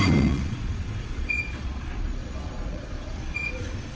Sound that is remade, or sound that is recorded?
remade